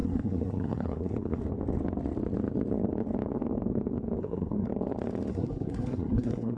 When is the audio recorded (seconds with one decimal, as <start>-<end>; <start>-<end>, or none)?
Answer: 1.4-4.2; 4.7-5.3